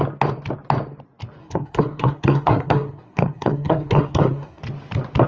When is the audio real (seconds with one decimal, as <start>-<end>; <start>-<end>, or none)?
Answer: 0.0-1.4; 4.6-5.3